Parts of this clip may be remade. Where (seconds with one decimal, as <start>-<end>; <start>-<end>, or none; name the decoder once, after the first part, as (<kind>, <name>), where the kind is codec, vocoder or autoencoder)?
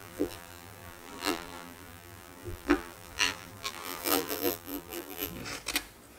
0.0-5.4 (vocoder, BigVGAN v2)